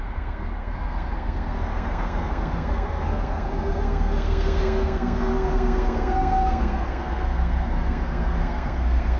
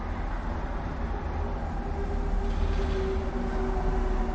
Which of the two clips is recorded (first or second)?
second